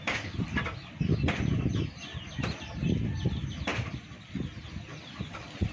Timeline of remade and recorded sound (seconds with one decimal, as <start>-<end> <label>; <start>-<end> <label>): 0.0-5.7 recorded